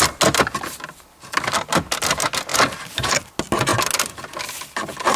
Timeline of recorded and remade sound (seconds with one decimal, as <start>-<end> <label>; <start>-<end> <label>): 0.0-5.2 recorded